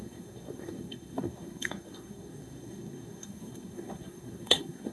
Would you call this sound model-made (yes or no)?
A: yes